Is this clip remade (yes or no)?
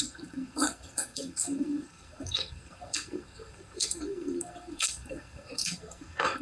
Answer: yes